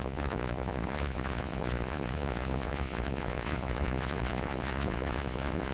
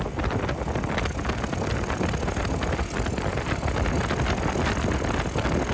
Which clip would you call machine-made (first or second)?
first